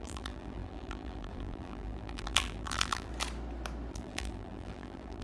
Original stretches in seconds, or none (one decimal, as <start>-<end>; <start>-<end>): 3.1-3.9

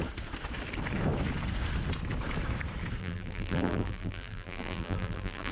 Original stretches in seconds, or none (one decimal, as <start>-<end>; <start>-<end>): 0.0-3.0

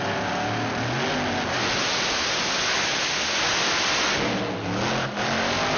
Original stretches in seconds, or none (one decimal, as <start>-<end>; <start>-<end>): 0.0-5.8